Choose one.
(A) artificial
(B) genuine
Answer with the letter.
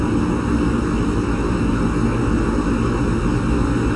B